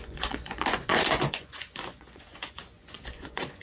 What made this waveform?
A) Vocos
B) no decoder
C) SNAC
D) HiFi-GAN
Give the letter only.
A